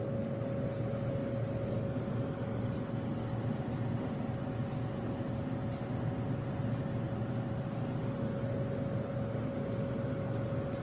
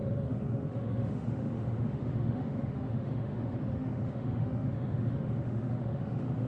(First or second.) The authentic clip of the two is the first